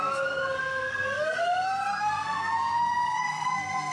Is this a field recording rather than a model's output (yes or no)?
no